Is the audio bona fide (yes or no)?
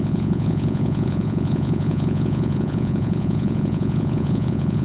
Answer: no